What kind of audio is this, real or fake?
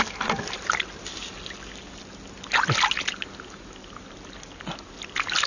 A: real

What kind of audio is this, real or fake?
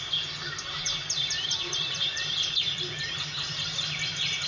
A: fake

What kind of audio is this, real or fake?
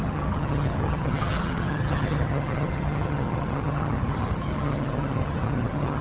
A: fake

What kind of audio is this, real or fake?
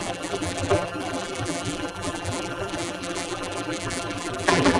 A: fake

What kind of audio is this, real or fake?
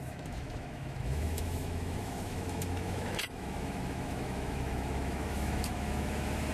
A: fake